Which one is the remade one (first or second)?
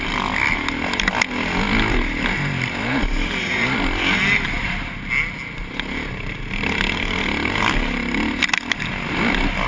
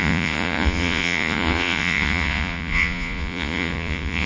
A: second